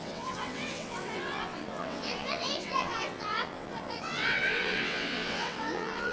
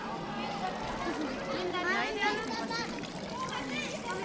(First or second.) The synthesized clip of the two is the first